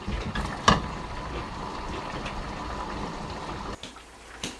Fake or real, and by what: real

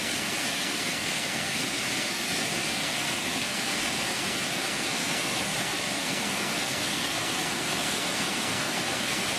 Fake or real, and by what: fake, codec, SNAC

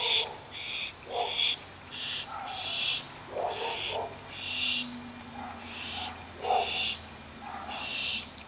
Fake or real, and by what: real